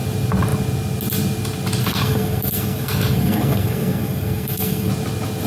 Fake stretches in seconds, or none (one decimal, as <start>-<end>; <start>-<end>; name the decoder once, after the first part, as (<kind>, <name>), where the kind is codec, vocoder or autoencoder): 1.8-4.9 (codec, SNAC)